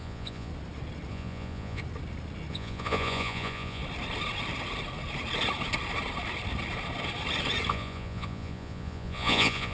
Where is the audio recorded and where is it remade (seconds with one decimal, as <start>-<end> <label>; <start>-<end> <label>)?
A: 0.0-0.5 remade; 0.5-1.1 recorded; 1.1-1.8 remade; 1.8-2.5 recorded; 2.5-3.8 remade; 3.8-7.7 recorded; 7.7-9.7 remade